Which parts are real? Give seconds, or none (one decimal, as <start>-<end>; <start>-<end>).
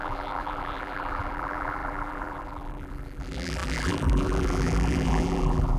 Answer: none